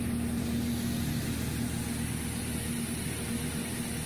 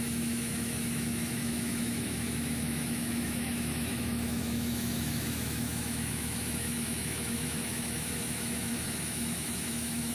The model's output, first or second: second